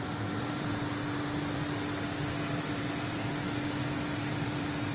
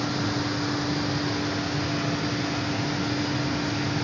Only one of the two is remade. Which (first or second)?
first